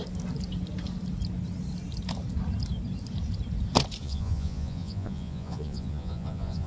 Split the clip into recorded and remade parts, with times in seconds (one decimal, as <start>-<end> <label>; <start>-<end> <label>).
0.0-4.0 recorded; 4.0-6.7 remade